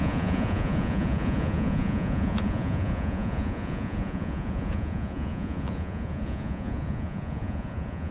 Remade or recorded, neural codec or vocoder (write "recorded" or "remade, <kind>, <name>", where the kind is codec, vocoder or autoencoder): remade, vocoder, Vocos